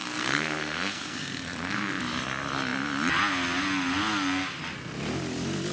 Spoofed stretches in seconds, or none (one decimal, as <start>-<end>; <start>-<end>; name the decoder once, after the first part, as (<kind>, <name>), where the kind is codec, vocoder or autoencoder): 0.0-2.0 (codec, SNAC)